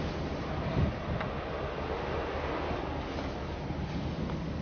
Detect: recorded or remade recorded